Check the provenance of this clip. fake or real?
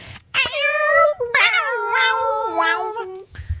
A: fake